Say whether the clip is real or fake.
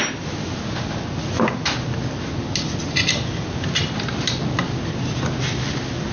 real